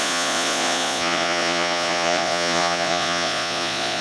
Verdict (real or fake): fake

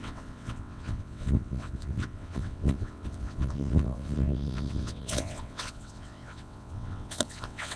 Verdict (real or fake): fake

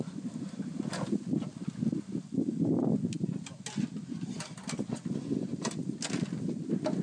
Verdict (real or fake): real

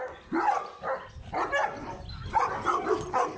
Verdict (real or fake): real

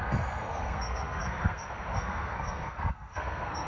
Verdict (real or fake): fake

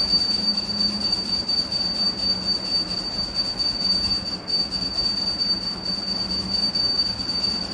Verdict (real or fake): real